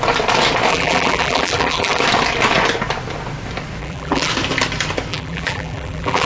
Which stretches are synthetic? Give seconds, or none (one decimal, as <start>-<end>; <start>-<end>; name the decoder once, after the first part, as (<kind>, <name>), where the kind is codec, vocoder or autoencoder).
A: 0.7-2.0 (vocoder, BigVGAN v2); 3.8-4.3; 5.1-6.3